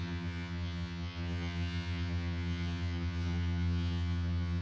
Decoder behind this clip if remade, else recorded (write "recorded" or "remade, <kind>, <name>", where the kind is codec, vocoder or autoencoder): remade, vocoder, HiFi-GAN